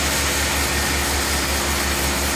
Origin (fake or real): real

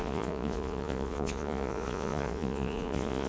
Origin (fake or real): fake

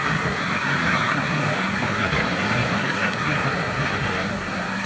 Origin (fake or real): fake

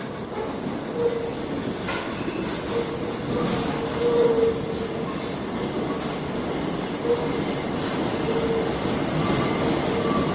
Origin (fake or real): real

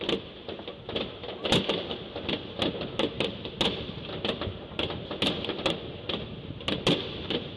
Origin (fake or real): real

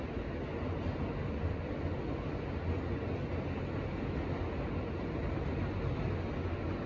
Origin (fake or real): real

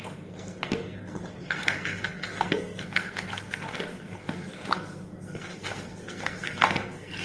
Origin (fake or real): fake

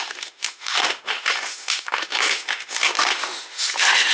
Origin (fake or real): fake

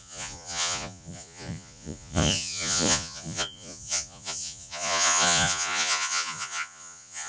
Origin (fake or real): fake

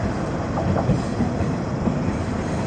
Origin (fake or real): real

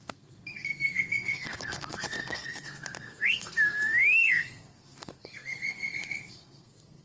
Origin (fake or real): fake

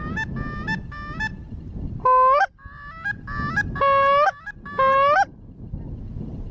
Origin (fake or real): real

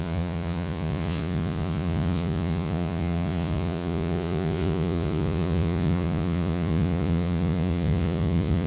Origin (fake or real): fake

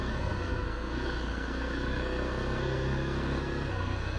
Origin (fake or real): fake